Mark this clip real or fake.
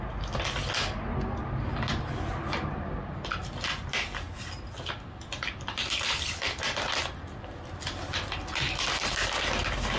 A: real